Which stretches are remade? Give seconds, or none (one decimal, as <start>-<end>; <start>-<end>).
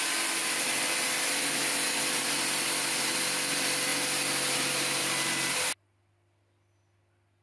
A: none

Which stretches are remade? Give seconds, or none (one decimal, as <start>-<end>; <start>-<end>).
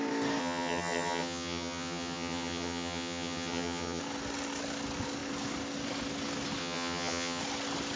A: 0.4-4.0; 6.6-7.4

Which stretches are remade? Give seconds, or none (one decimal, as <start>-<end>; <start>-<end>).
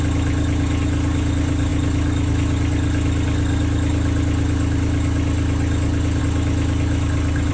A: none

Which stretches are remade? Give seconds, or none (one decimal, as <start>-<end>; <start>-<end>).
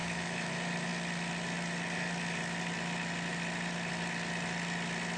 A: 0.0-0.5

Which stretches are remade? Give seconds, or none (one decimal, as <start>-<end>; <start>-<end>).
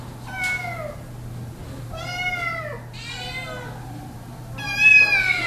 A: none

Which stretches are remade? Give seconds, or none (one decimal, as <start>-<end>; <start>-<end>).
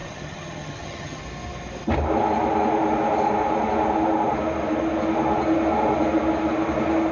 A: 0.0-1.2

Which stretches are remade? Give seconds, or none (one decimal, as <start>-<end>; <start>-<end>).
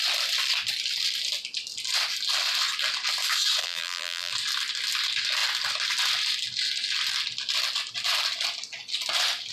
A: 3.6-4.3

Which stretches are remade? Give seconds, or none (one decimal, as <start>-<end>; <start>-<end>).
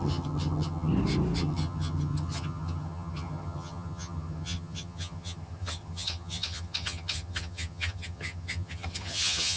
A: 0.0-0.9; 1.4-9.6